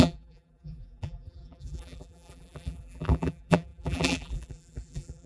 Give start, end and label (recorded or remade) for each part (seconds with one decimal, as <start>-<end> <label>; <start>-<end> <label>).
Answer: 0.0-5.3 remade

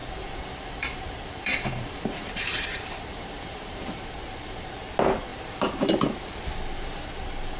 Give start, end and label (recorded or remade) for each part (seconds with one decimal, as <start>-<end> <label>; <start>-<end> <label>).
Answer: 0.0-4.0 remade; 4.0-5.3 recorded; 5.3-6.4 remade; 6.4-7.6 recorded

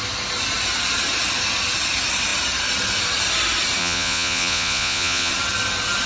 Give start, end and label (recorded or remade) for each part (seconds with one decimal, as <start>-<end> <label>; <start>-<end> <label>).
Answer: 0.0-3.8 recorded; 3.8-5.3 remade; 5.3-6.1 recorded

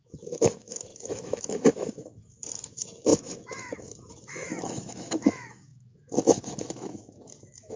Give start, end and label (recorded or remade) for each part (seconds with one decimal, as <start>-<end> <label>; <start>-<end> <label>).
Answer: 0.0-7.8 remade

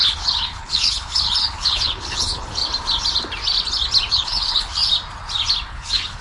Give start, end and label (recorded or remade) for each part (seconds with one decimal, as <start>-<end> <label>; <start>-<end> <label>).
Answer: 0.0-2.6 remade; 2.6-4.1 recorded; 4.1-4.8 remade; 4.8-5.7 recorded; 5.7-6.2 remade